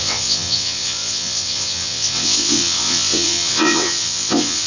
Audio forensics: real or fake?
fake